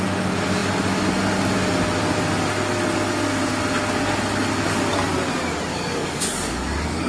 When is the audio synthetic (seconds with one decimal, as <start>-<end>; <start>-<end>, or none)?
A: 5.7-7.1